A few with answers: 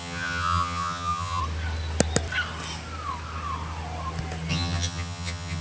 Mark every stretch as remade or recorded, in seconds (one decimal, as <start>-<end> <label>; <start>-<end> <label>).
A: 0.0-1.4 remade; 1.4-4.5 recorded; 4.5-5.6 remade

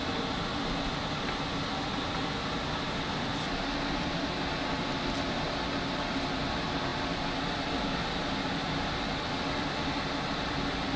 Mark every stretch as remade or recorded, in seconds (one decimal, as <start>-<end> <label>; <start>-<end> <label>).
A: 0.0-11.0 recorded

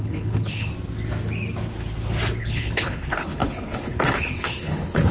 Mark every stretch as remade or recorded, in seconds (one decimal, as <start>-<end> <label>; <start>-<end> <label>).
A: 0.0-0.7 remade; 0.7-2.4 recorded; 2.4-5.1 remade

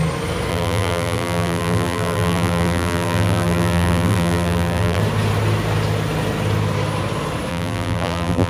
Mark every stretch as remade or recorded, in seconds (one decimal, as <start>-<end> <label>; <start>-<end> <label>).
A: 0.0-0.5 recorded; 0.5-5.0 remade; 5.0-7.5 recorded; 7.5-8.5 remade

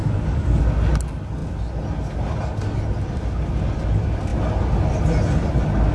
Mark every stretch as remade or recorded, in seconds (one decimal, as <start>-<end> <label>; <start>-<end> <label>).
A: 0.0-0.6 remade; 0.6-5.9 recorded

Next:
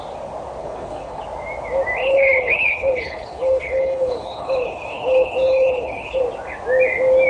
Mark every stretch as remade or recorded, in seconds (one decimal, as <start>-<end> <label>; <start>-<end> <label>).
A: 0.0-0.6 recorded; 0.6-1.2 remade; 1.2-2.0 recorded; 2.0-6.2 remade; 6.2-7.3 recorded

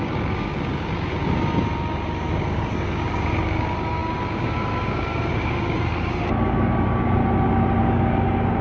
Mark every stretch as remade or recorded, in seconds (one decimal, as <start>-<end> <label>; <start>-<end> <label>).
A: 0.0-7.2 remade; 7.2-7.8 recorded; 7.8-8.6 remade

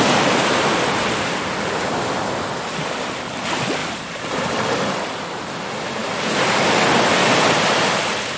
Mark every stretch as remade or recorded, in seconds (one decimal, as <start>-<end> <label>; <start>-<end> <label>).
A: 0.0-3.8 recorded; 3.8-4.7 remade; 4.7-8.4 recorded